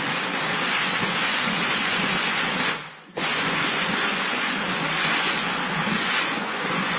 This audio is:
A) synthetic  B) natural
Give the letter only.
A